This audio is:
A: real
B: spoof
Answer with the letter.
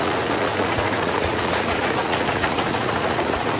B